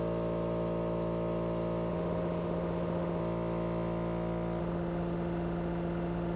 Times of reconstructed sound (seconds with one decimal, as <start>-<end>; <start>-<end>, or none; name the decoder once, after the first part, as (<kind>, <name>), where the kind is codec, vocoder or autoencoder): 1.9-3.2 (autoencoder, DAC-VAE); 4.6-6.4